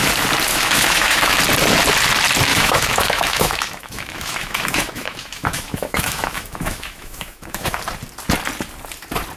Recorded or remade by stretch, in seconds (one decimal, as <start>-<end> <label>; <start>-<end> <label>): 0.0-0.5 recorded; 0.5-1.4 remade; 1.4-2.5 recorded; 2.5-7.8 remade; 7.8-9.4 recorded